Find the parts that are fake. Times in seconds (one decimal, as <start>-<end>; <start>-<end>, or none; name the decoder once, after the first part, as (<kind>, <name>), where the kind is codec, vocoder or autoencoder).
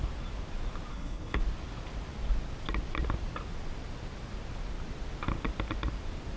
0.9-1.4 (codec, HILCodec)